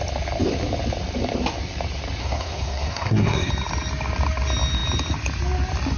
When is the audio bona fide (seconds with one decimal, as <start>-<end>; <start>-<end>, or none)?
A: 0.0-2.2; 3.5-6.0